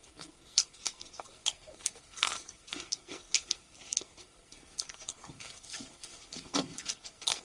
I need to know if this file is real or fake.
fake